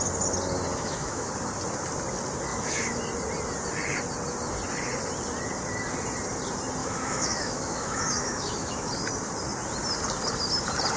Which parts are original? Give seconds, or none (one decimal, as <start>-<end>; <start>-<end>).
0.0-0.7; 1.3-2.5; 3.0-6.8; 8.9-11.0